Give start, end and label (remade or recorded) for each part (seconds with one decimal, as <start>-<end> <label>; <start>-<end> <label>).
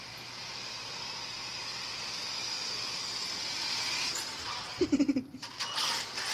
0.0-6.3 recorded